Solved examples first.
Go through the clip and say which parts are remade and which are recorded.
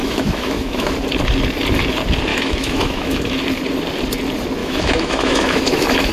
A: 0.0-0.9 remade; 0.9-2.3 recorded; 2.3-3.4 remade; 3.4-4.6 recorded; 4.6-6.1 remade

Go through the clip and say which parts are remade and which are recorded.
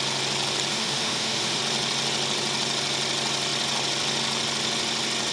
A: 0.0-0.7 recorded; 0.7-1.6 remade; 1.6-5.3 recorded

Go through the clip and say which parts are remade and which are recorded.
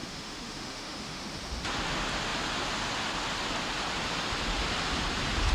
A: 0.0-1.2 remade; 1.2-5.5 recorded